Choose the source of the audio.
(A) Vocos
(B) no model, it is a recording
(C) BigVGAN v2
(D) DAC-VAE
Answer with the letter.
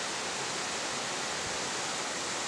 B